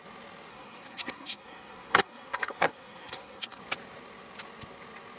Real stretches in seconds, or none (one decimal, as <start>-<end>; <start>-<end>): 0.0-0.5; 3.6-5.2